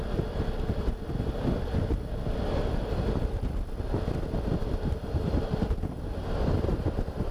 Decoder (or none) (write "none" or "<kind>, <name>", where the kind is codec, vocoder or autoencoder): vocoder, BigVGAN v2